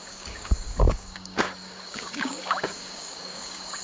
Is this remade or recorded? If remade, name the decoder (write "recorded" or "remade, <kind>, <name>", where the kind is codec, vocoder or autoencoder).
remade, codec, DAC